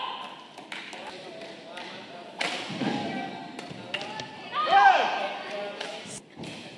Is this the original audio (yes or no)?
yes